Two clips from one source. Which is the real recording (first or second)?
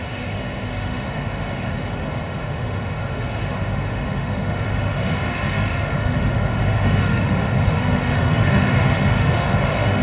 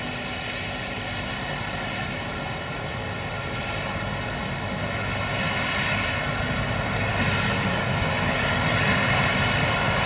second